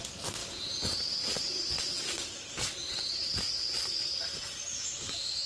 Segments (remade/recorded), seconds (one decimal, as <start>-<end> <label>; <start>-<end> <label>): 0.0-4.7 recorded; 4.7-5.5 remade